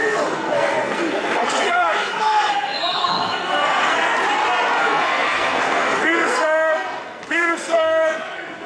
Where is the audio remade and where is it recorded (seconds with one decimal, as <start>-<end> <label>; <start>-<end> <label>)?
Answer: 0.0-4.1 remade; 4.1-4.8 recorded; 4.8-8.7 remade